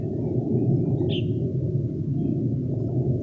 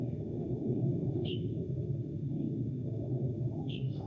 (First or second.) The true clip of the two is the first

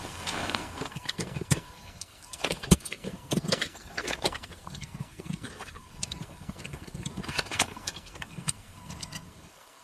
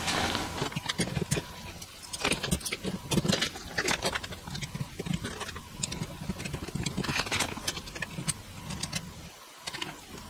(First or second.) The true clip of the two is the second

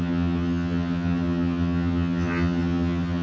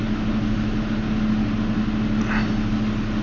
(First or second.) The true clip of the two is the second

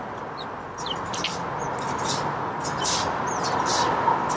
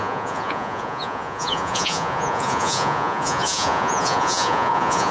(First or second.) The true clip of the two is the first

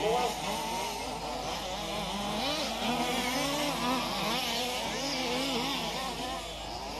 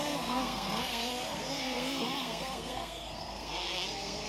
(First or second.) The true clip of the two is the first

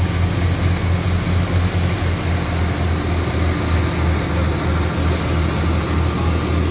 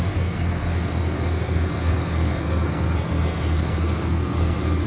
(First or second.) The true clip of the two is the first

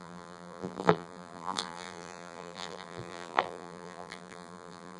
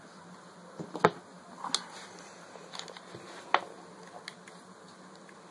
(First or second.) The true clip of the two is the second